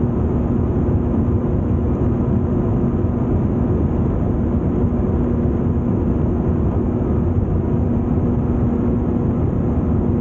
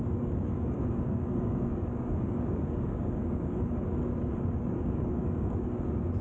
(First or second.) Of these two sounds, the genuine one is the first